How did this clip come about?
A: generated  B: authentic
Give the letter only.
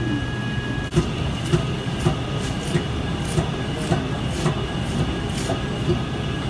B